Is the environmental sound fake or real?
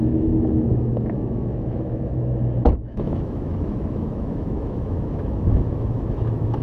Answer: fake